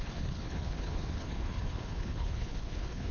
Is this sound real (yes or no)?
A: no